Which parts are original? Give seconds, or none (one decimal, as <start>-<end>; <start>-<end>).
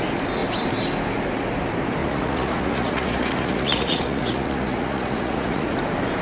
0.0-2.0; 5.7-6.2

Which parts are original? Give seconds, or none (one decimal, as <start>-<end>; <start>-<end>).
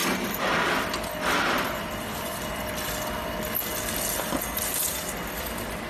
0.0-5.9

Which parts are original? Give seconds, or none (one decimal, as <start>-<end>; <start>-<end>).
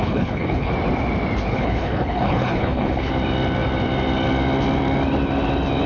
0.7-1.5; 3.1-5.9